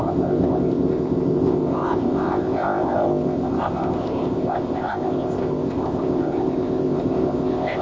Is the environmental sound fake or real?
fake